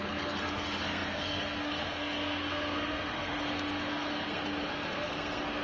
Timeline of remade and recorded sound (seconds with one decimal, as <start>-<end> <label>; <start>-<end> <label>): 0.0-5.6 remade